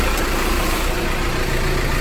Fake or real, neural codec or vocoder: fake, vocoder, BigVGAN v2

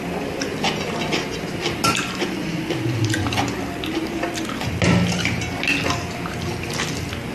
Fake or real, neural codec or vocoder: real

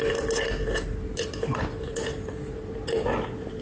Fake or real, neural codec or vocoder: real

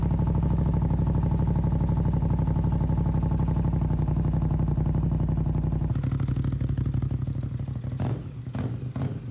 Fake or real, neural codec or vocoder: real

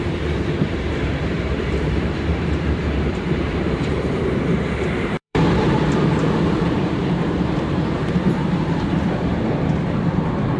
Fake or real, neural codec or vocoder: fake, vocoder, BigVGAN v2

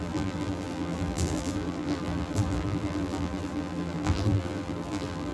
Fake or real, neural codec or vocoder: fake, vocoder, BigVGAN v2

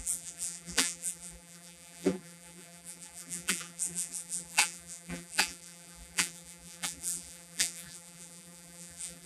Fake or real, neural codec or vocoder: fake, vocoder, BigVGAN v2